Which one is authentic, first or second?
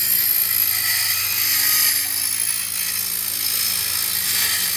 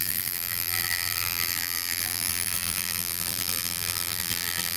first